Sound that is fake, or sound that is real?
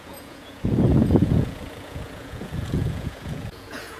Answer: fake